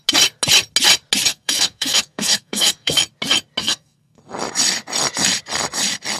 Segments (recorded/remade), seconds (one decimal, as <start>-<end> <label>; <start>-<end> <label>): 0.0-1.3 recorded; 1.3-3.0 remade; 3.0-3.6 recorded; 3.6-4.2 remade; 4.2-6.2 recorded